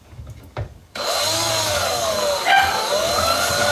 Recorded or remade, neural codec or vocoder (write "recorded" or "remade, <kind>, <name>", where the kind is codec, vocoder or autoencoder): remade, codec, DAC